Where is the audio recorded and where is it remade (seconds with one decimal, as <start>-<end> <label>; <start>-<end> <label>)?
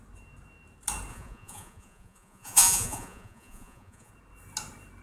0.0-1.1 recorded; 1.1-4.1 remade; 4.1-5.0 recorded